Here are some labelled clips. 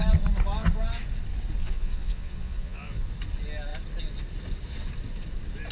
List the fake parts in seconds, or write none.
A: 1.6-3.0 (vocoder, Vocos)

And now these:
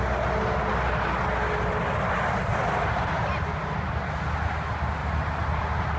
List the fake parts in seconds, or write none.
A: 2.5-3.9 (vocoder, BigVGAN v2); 5.0-5.6

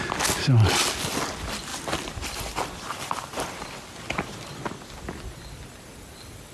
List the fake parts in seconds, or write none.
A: 1.7-3.6 (vocoder, BigVGAN v2)

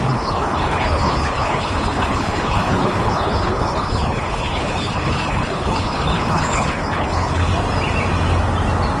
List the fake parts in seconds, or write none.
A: 0.0-7.5 (codec, HILCodec)

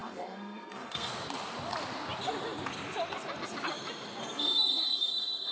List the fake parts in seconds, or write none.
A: 0.0-1.1 (codec, SNAC); 4.2-5.5

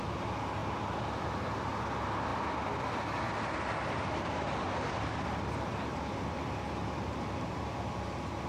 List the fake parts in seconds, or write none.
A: 2.3-7.4 (vocoder, BigVGAN v2)

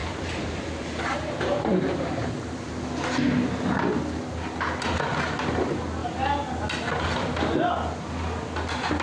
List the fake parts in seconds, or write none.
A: 0.0-2.8 (vocoder, BigVGAN v2)